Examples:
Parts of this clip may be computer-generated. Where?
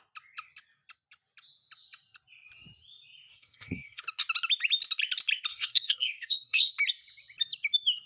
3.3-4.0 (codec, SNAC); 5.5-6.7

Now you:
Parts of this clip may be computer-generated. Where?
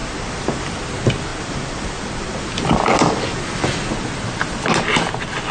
0.0-0.6 (vocoder, BigVGAN v2); 1.3-2.4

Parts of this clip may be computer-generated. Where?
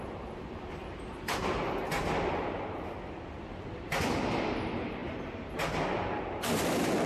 0.0-0.8 (vocoder, BigVGAN v2); 3.3-7.1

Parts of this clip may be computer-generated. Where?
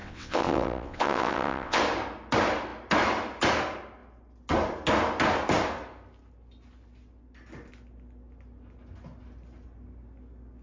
0.0-1.8 (vocoder, WaveNeXt)